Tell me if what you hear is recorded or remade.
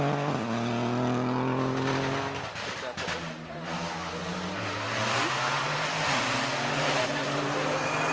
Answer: recorded